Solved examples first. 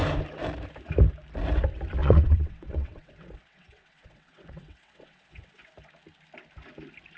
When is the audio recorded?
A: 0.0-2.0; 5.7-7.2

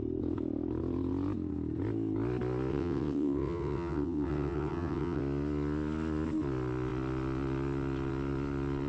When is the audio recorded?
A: 0.0-2.7; 5.2-8.9

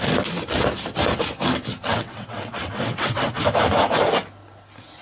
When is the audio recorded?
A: 0.0-1.9; 3.3-5.0

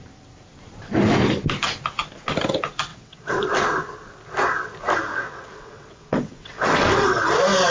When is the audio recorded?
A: 0.0-2.9; 3.4-5.1; 7.3-7.7

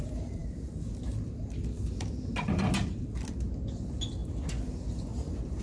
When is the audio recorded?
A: 0.0-5.6